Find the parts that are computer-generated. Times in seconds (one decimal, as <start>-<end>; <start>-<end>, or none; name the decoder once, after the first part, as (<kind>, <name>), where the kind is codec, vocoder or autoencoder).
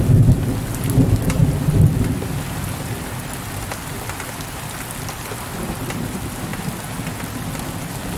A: none